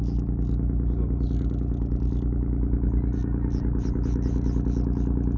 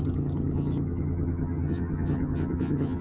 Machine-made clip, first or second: second